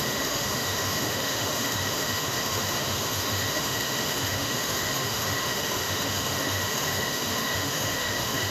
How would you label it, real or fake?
fake